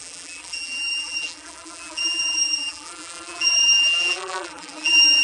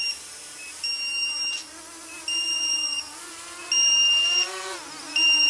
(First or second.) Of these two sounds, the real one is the second